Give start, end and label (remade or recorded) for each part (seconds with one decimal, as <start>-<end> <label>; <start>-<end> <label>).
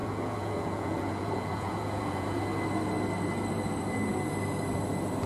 0.0-2.4 remade; 2.4-5.3 recorded